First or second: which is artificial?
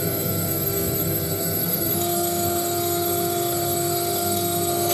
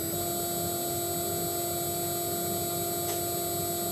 first